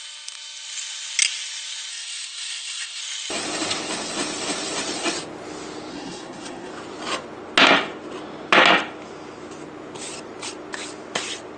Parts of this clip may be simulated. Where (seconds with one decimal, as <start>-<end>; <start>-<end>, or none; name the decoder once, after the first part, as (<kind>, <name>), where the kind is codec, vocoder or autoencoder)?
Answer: 1.9-3.0 (codec, SNAC); 5.9-6.7